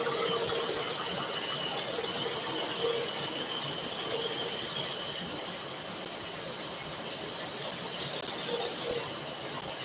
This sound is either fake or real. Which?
real